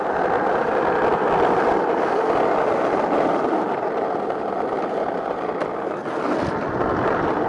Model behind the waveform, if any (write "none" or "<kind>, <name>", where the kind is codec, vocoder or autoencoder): none